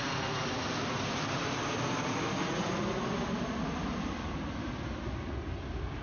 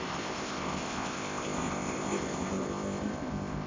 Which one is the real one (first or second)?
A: first